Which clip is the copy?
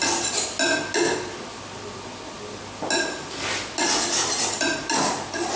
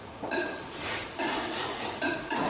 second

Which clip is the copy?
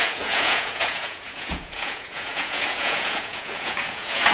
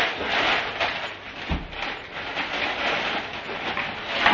first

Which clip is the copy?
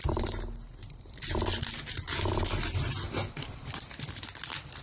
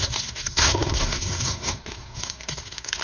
second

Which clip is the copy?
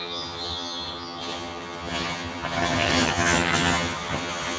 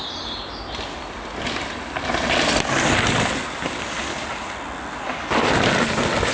first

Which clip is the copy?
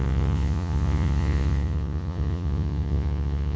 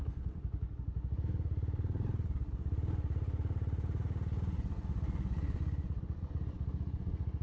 first